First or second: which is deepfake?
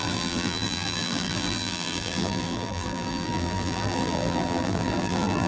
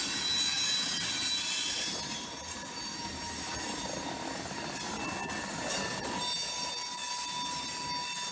first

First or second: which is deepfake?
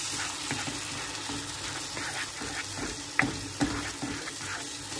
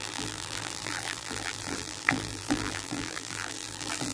second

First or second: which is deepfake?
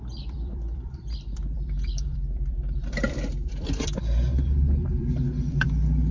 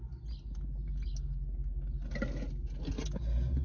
first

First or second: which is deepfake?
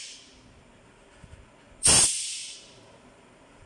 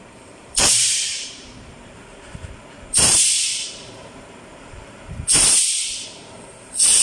second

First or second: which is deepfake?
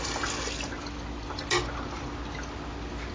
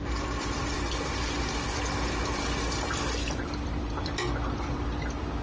second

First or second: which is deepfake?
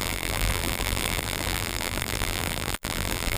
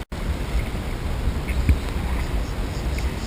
first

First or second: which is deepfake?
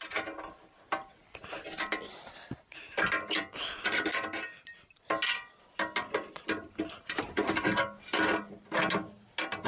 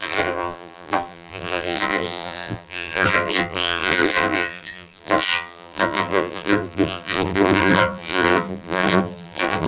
second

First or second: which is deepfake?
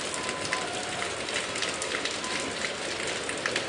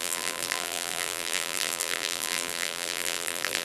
second